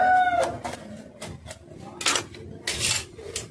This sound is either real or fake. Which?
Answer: real